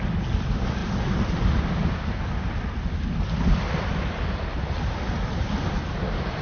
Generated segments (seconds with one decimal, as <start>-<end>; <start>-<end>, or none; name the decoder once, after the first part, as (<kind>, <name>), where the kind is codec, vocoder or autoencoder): 0.8-1.7 (vocoder, BigVGAN v2)